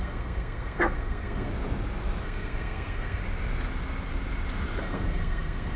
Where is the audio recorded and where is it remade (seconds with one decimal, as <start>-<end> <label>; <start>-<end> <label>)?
0.0-1.5 remade; 1.5-2.2 recorded; 2.2-3.2 remade; 3.2-4.8 recorded; 4.8-5.8 remade